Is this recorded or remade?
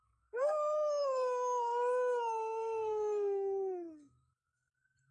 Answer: remade